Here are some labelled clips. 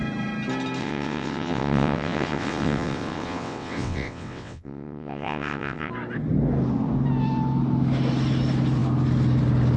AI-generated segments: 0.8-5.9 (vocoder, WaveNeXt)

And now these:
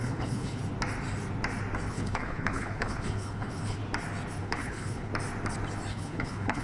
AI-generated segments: 0.0-0.6 (codec, HILCodec); 1.9-3.8; 4.4-5.1; 5.9-6.6

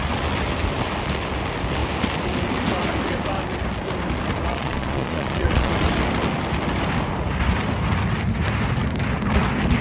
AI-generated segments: 4.5-5.7 (vocoder, Vocos)

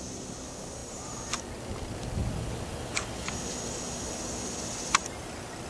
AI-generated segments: none

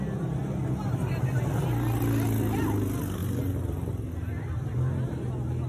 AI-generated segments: none

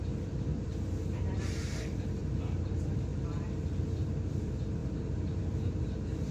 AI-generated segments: 0.0-6.3 (vocoder, BigVGAN v2)

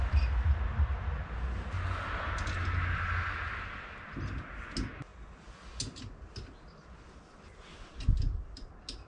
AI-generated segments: none